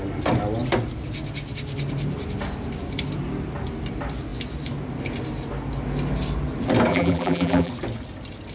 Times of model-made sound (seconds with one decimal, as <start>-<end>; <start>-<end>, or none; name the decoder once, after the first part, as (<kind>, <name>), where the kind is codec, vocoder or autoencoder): 6.9-7.7 (vocoder, BigVGAN v2)

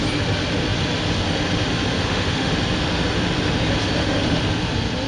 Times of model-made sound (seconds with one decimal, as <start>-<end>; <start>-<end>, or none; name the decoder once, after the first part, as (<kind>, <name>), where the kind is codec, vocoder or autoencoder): 2.0-2.5 (autoencoder, DAC-VAE); 4.0-4.6

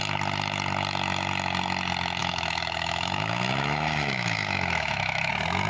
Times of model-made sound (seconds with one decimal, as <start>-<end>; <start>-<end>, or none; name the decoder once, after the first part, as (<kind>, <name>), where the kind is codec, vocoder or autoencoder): 2.2-5.3 (autoencoder, DAC-VAE)

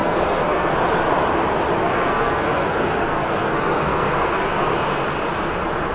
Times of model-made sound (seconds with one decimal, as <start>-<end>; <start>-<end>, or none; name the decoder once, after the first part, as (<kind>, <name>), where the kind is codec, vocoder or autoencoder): 0.0-0.7 (codec, SNAC); 1.8-4.7

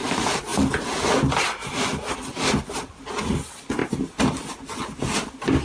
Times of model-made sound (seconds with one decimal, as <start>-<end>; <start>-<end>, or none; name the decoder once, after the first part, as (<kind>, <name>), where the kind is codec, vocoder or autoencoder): none